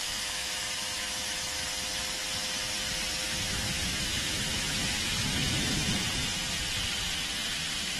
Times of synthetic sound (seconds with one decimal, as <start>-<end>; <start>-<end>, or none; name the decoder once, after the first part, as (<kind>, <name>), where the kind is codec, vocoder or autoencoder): 0.0-1.7 (autoencoder, DAC-VAE); 3.4-5.6